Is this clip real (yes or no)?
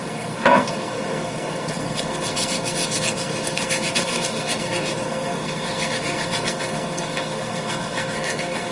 no